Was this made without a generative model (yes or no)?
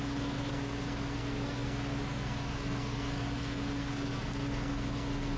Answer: no